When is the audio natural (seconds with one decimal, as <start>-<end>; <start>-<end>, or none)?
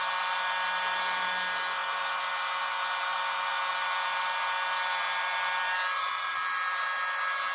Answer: 0.0-7.5